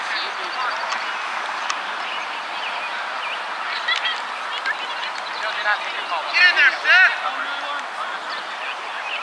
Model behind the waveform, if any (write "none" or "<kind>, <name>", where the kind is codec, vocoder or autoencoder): none